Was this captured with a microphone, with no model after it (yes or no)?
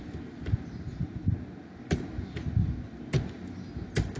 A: yes